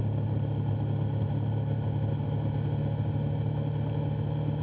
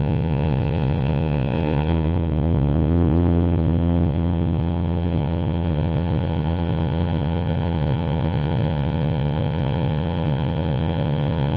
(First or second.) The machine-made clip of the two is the second